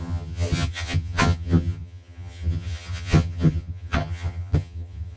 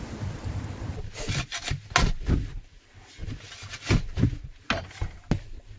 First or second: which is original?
second